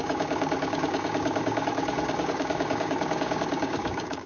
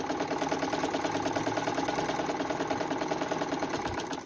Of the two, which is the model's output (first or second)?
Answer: first